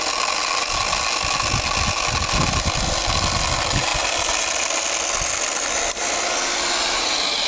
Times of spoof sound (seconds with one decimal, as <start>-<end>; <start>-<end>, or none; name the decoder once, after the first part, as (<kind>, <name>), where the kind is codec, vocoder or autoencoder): none